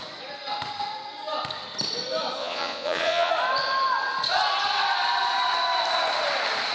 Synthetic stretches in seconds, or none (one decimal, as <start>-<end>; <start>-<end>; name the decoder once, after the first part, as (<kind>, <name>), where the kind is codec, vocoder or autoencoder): 2.4-3.3 (vocoder, Vocos)